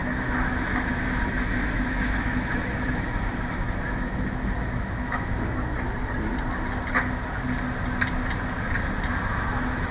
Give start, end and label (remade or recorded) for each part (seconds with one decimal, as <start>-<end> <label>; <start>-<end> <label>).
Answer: 0.0-5.7 remade; 5.7-9.1 recorded; 9.1-9.9 remade